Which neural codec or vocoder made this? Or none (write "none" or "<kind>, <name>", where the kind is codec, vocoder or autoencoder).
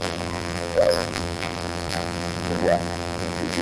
vocoder, BigVGAN v2